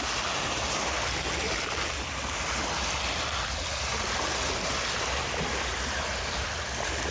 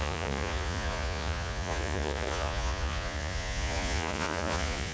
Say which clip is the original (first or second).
first